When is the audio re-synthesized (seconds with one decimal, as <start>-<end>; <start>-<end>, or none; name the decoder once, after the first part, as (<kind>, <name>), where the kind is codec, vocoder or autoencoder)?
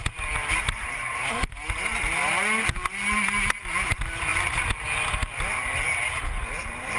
0.4-1.4 (vocoder, BigVGAN v2)